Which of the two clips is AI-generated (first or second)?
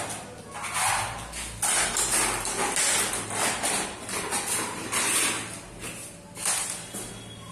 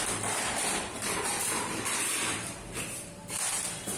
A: second